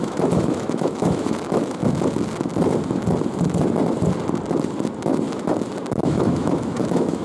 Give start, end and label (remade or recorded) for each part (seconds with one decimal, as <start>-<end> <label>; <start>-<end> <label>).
0.0-1.8 remade; 1.8-5.9 recorded; 5.9-7.2 remade